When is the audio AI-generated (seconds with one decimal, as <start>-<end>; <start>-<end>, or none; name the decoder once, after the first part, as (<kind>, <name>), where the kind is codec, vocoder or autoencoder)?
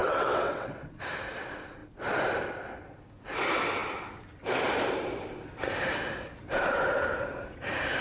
0.0-1.0 (vocoder, WaveNeXt)